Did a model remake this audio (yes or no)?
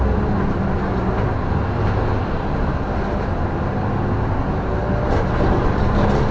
no